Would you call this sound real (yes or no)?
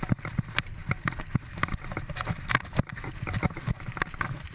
yes